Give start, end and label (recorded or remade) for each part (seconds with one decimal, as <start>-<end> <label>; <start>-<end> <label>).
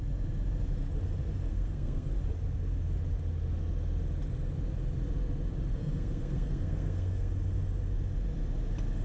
0.0-1.5 recorded; 1.5-2.1 remade; 2.1-5.8 recorded; 5.8-7.3 remade; 7.3-9.0 recorded